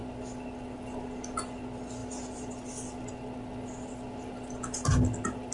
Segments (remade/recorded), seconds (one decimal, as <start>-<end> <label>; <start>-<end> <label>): 0.0-5.5 recorded